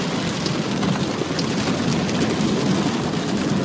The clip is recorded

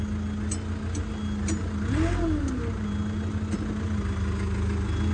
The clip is recorded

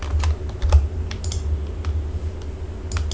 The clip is recorded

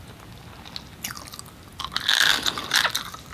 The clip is recorded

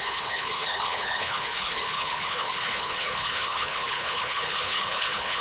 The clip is remade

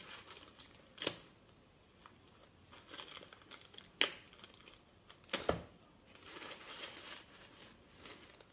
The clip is recorded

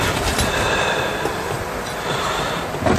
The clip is recorded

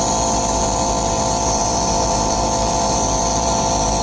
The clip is remade